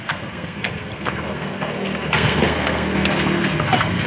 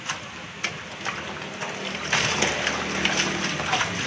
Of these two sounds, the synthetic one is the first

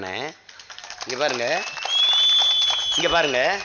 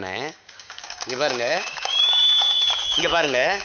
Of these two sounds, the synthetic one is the second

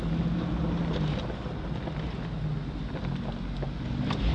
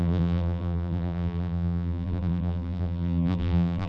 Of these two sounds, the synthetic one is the second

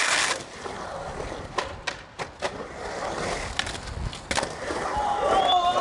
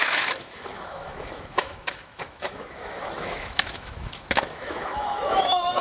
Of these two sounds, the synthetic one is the second